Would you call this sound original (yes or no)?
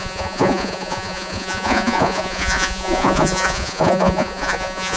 no